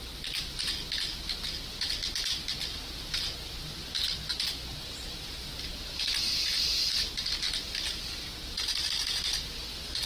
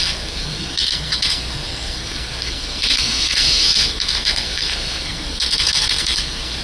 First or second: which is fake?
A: second